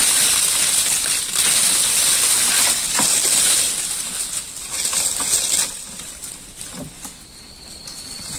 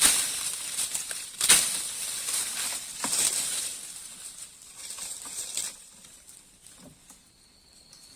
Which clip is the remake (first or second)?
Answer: second